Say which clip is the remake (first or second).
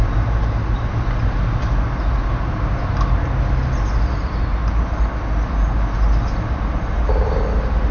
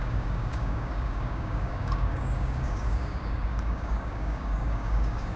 second